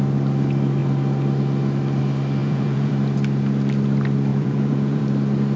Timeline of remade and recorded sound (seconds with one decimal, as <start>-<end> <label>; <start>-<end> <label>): 0.0-2.4 recorded; 2.4-2.9 remade; 2.9-4.3 recorded; 4.3-5.0 remade; 5.0-5.6 recorded